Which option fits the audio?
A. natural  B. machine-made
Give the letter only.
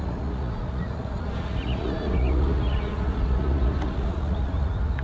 B